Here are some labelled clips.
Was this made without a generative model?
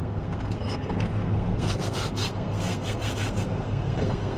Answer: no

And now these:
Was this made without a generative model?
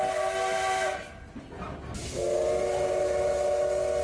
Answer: yes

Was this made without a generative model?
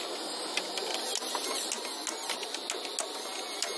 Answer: yes